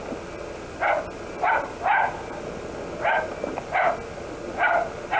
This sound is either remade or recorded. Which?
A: recorded